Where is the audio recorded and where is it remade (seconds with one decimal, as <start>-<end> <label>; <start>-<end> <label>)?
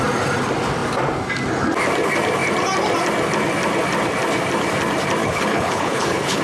0.0-5.2 recorded; 5.2-6.4 remade